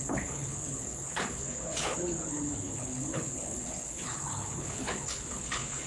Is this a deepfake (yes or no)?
yes